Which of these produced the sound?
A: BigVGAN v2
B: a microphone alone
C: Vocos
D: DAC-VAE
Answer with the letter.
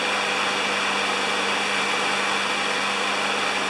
B